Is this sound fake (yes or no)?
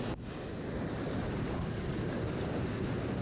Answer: no